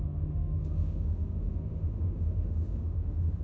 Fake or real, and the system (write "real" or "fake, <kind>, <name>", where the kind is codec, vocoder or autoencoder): fake, autoencoder, DAC-VAE